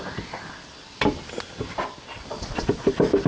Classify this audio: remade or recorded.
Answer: recorded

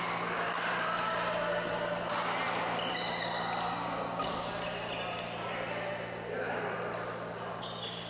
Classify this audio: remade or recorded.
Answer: recorded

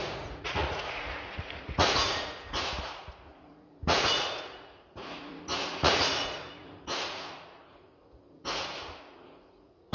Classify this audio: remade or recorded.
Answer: remade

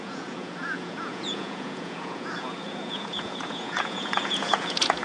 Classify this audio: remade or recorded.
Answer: remade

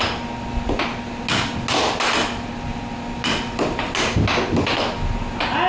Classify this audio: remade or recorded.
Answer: recorded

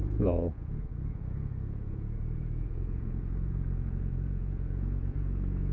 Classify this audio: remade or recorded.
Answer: remade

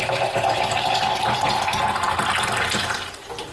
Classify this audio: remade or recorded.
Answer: recorded